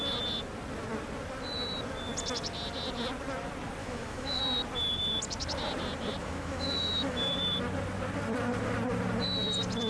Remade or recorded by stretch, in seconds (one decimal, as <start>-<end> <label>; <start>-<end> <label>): 0.0-3.8 recorded; 3.8-4.4 remade; 4.4-6.2 recorded; 6.2-7.3 remade; 7.3-9.9 recorded